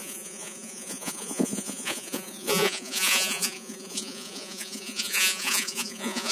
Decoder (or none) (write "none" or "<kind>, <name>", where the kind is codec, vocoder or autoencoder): vocoder, Vocos